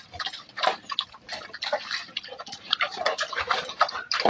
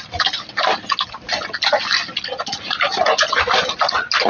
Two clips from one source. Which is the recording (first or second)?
second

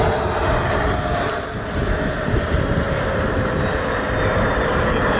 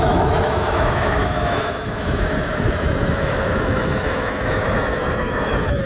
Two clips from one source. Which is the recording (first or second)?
first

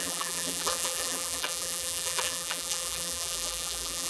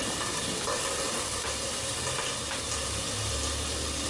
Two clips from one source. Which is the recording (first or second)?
second